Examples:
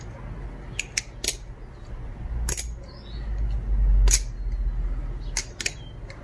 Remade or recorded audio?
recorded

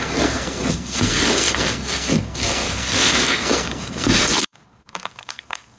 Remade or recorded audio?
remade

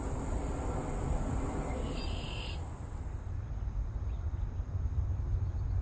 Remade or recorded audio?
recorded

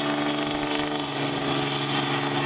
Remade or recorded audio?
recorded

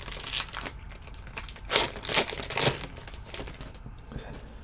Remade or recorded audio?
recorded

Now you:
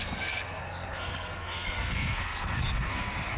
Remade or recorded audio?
remade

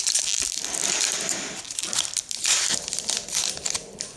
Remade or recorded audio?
remade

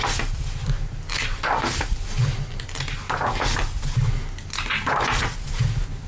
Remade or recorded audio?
recorded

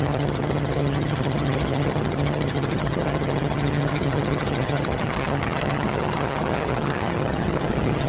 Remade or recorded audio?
remade